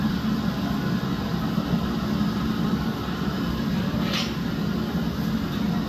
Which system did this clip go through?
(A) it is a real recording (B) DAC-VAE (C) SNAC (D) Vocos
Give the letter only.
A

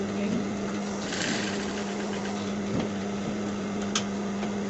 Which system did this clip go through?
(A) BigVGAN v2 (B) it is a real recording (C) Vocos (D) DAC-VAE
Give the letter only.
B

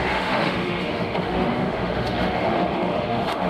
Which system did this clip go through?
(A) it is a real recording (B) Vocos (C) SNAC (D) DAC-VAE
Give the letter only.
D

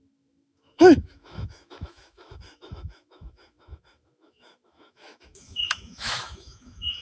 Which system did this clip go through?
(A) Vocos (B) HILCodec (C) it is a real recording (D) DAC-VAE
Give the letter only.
D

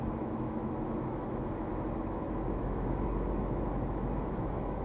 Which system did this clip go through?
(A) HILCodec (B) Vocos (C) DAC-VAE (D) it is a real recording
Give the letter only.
C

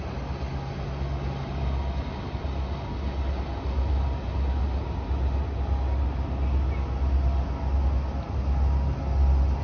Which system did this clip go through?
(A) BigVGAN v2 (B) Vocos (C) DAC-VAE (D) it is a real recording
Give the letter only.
D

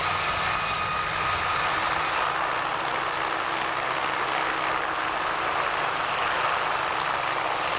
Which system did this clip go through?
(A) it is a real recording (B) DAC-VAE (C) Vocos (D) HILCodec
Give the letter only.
A